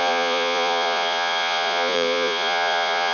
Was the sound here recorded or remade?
remade